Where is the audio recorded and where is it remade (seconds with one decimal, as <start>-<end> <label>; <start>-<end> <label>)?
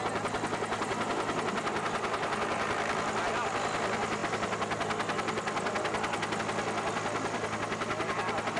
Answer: 0.0-8.6 recorded